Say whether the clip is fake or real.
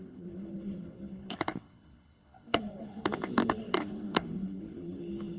fake